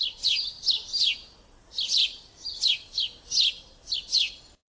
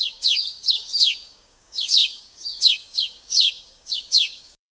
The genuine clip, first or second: first